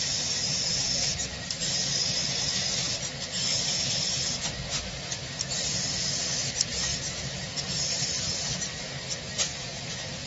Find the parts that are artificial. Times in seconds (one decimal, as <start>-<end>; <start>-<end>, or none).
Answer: 6.9-7.7; 9.5-10.3